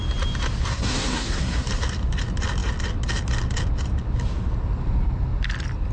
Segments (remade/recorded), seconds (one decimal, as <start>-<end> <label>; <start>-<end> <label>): 0.0-0.7 recorded; 0.7-1.6 remade; 1.6-5.9 recorded